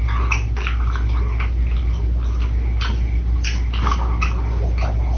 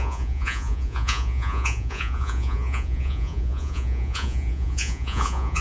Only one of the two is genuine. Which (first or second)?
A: first